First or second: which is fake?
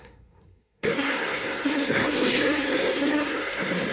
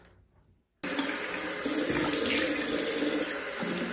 first